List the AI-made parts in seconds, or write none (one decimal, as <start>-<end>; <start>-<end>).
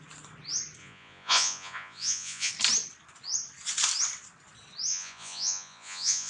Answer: 0.8-2.5; 4.9-6.3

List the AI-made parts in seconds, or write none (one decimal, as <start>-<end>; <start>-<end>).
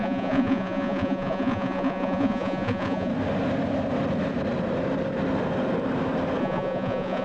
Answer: 0.0-3.1; 6.4-7.2